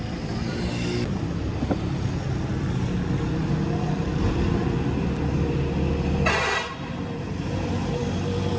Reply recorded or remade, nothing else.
recorded